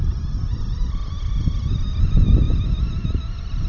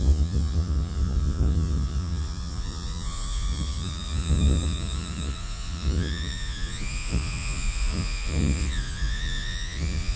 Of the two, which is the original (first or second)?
first